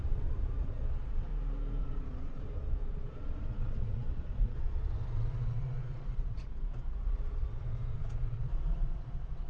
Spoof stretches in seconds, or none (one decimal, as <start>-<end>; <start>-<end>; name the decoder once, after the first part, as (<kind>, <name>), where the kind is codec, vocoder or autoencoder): 0.0-1.3 (vocoder, Vocos); 1.8-9.5